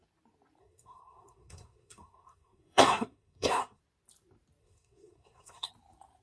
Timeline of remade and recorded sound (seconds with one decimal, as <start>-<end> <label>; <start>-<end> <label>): 0.0-0.6 recorded; 0.6-3.8 remade; 3.8-4.6 recorded; 4.6-5.7 remade; 5.7-6.2 recorded